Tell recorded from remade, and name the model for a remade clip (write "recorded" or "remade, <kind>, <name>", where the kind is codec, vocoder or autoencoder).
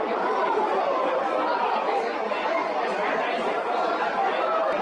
remade, vocoder, BigVGAN v2